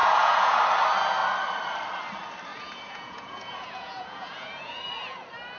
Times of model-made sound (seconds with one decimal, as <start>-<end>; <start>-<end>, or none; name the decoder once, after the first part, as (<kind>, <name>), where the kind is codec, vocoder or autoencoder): 0.0-0.6 (vocoder, Vocos); 2.5-4.8